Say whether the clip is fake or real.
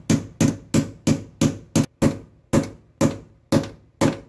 real